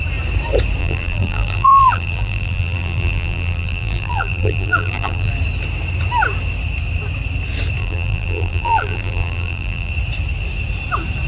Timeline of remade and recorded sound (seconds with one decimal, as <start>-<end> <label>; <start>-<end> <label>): 0.0-0.8 recorded; 0.8-5.3 remade; 5.3-7.8 recorded; 7.8-9.9 remade; 9.9-11.3 recorded